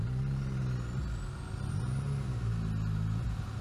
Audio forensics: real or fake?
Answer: real